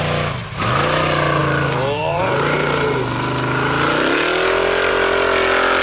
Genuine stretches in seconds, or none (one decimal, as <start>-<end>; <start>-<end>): 0.0-5.8